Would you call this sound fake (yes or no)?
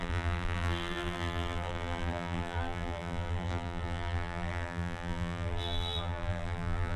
yes